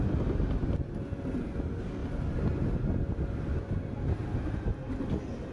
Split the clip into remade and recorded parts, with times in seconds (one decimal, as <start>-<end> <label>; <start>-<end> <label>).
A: 0.0-5.5 recorded